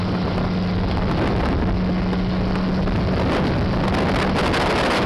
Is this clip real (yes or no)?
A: yes